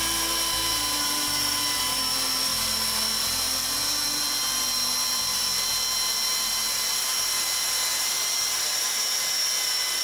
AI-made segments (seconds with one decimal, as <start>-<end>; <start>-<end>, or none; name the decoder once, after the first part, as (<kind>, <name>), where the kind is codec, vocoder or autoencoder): none